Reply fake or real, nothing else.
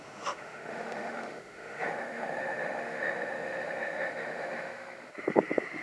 fake